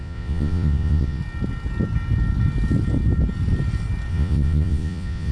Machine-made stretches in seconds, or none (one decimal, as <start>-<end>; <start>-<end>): 0.0-1.2; 4.1-5.3